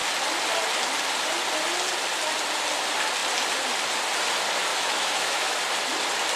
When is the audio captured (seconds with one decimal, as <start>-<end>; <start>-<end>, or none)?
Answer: 0.0-4.7; 5.6-6.4